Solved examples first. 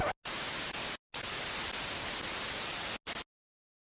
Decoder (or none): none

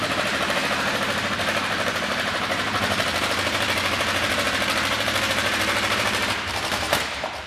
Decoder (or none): vocoder, BigVGAN v2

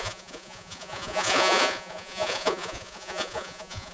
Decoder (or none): vocoder, Vocos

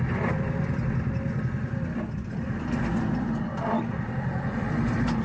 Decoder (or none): vocoder, BigVGAN v2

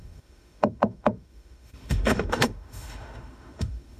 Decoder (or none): autoencoder, DAC-VAE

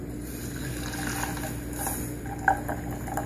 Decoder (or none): none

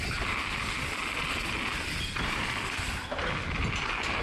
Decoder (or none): none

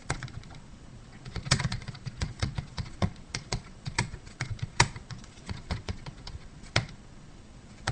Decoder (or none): vocoder, Vocos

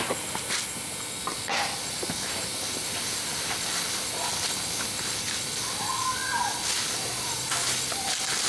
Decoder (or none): none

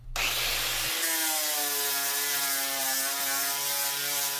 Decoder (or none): none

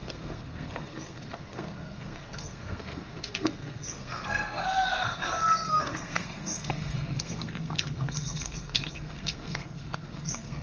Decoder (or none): codec, SNAC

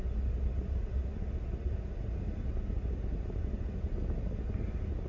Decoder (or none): none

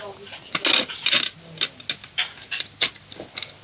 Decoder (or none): none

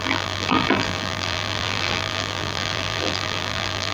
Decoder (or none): vocoder, BigVGAN v2